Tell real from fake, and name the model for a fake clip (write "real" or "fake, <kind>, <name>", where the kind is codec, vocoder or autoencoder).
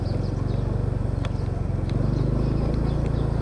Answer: real